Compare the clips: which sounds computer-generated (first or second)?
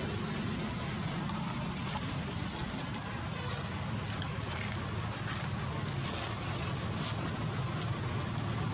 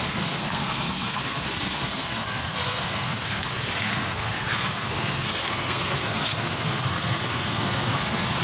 second